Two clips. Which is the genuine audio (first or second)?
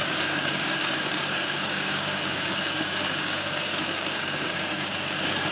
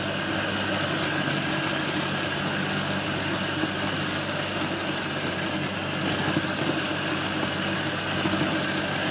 second